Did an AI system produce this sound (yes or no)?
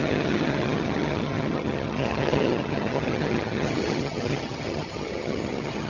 yes